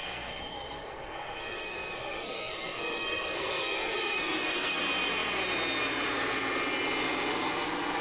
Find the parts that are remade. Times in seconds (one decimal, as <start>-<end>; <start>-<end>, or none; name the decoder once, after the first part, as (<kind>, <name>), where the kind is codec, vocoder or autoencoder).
0.0-4.8 (codec, SNAC)